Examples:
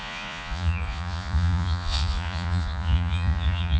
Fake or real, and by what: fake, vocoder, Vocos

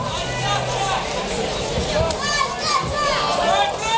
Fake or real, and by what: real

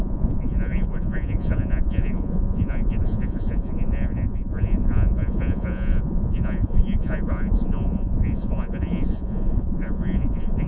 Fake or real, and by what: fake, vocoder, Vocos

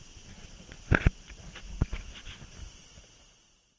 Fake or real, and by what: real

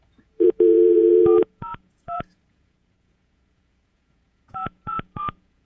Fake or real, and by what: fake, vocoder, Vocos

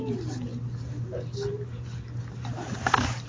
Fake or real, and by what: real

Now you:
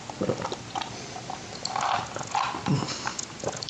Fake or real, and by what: fake, vocoder, BigVGAN v2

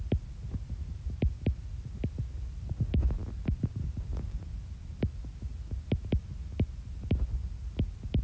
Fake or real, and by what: real